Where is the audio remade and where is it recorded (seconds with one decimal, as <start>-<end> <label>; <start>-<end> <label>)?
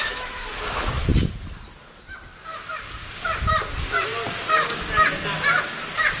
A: 0.0-0.6 remade; 0.6-6.2 recorded